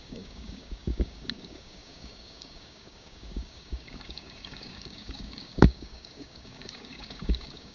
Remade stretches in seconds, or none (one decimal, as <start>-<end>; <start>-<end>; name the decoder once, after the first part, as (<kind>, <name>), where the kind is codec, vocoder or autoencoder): 0.0-7.7 (codec, DAC)